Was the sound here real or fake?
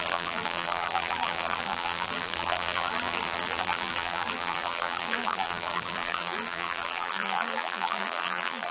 fake